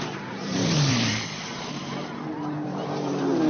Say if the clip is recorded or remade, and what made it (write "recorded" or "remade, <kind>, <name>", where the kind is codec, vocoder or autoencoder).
remade, vocoder, BigVGAN v2